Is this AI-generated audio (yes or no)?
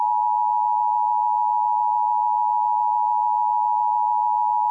no